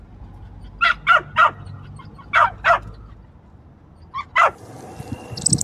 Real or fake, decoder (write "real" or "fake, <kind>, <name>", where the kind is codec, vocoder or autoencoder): real